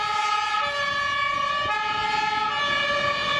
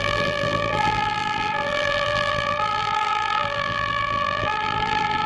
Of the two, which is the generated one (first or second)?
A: second